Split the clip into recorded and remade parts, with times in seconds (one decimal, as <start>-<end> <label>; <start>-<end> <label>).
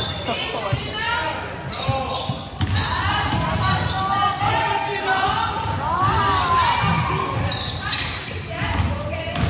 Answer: 0.0-9.5 recorded